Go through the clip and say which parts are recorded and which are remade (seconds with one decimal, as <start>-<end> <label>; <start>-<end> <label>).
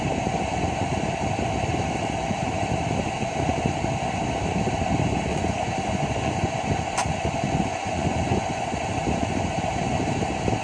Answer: 0.0-5.3 recorded; 5.3-6.7 remade; 6.7-7.7 recorded; 7.7-8.7 remade; 8.7-10.6 recorded